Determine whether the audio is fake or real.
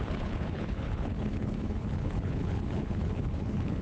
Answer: fake